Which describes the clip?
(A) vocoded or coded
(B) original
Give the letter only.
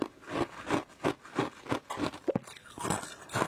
B